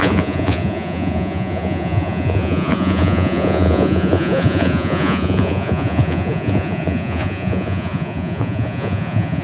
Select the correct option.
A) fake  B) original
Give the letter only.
A